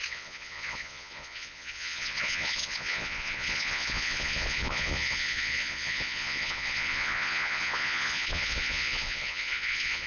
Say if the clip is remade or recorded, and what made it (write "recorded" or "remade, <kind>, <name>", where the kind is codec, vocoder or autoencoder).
remade, vocoder, Vocos